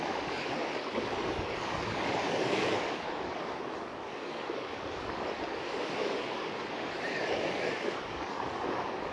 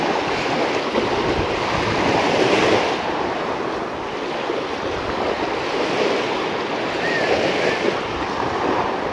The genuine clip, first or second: second